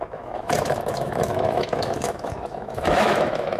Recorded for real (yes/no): no